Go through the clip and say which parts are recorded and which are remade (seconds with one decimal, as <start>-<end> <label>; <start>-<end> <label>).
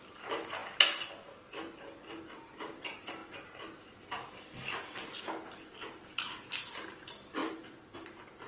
0.0-8.5 recorded